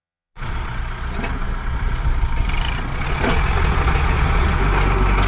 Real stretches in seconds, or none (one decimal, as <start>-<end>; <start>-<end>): 0.8-2.9; 4.6-5.3